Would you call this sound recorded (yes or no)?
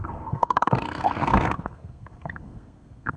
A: no